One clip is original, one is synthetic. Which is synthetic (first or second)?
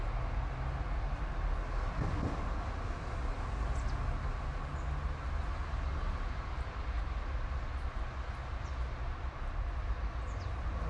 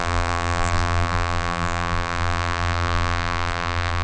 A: second